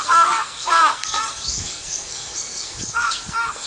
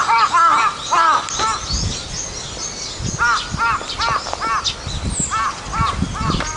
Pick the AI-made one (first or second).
first